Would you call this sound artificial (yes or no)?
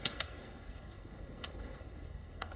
yes